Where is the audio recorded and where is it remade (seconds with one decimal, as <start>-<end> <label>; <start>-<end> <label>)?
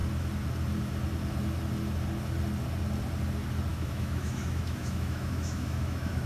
0.0-3.7 recorded; 3.7-6.3 remade